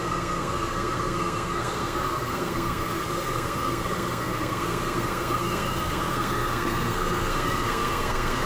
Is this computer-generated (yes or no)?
yes